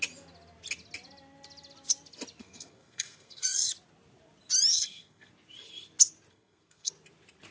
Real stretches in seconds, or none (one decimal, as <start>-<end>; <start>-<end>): 0.0-2.4; 3.7-4.7; 5.3-6.3; 6.9-7.5